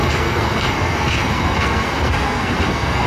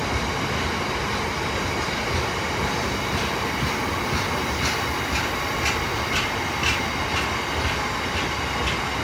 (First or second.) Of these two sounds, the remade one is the first